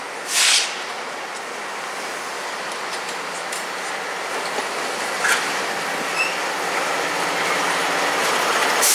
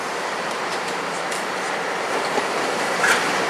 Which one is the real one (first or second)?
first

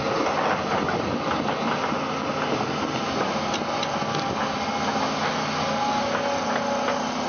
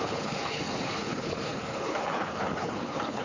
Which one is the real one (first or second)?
first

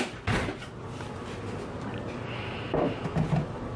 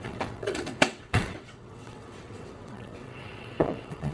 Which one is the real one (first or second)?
first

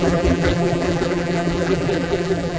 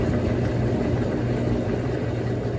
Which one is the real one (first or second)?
second